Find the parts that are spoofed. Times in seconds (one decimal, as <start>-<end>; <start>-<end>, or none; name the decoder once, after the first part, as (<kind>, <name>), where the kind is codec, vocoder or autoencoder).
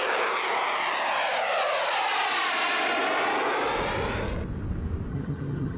5.1-5.8 (vocoder, HiFi-GAN)